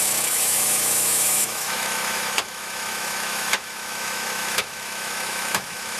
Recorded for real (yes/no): no